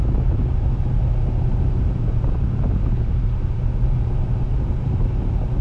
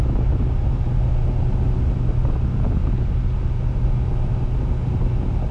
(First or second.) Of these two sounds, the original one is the second